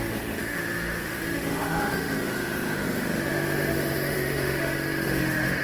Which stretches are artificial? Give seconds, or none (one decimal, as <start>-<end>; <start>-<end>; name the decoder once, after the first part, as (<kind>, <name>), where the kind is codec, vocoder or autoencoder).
0.0-5.6 (autoencoder, DAC-VAE)